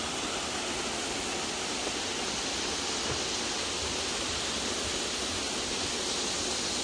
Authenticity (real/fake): real